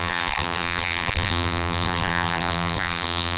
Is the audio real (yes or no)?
no